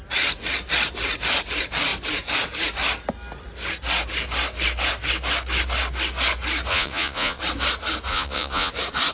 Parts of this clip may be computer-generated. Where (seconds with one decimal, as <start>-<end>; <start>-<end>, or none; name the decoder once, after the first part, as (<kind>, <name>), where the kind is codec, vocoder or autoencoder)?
6.7-7.4 (vocoder, Vocos); 8.1-8.7